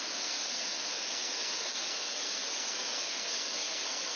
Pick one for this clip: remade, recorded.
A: remade